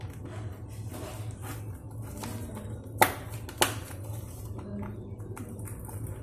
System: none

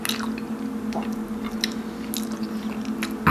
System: none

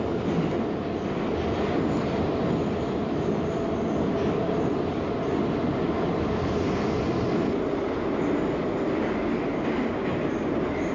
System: none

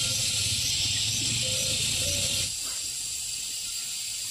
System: none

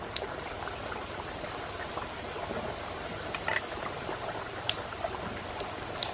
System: none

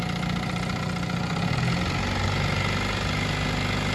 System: none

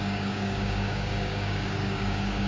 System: codec, DAC